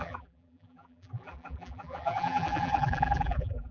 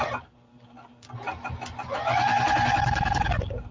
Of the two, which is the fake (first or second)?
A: first